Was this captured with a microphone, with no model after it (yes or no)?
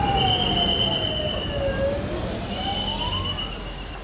yes